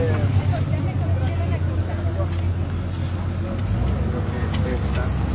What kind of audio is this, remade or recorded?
recorded